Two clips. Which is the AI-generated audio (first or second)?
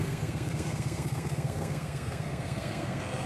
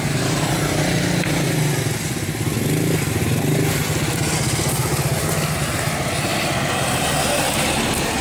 first